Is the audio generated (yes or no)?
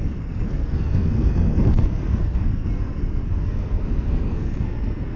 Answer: yes